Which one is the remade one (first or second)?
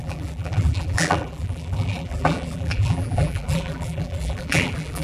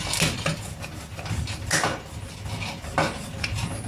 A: first